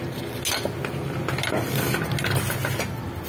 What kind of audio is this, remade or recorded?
recorded